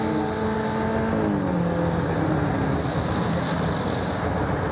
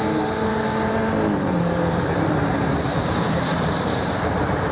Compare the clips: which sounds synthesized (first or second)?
second